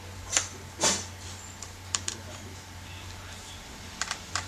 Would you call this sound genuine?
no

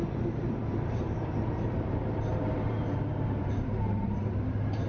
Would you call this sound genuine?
no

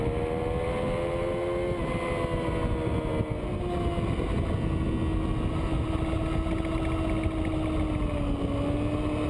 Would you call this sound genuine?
yes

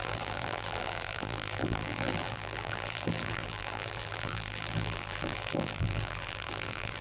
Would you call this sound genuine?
no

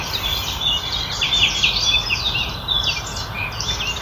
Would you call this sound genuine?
yes